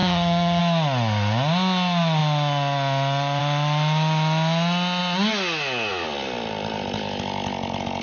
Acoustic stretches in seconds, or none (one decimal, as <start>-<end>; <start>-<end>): 0.6-8.0